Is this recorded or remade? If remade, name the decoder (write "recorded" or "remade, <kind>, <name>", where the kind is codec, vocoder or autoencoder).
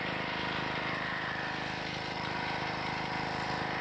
remade, vocoder, BigVGAN v2